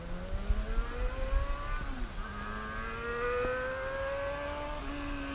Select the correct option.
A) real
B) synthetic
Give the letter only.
A